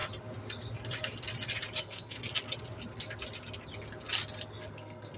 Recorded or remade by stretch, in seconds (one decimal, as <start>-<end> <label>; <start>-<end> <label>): 0.0-1.8 recorded; 1.8-2.2 remade; 2.2-4.7 recorded; 4.7-5.2 remade